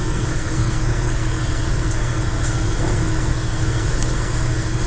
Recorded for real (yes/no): no